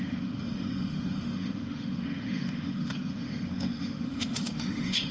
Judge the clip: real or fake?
fake